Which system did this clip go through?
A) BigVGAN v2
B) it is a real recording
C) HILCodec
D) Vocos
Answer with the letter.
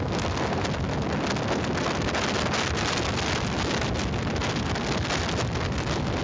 B